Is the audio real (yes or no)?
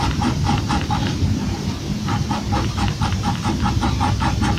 no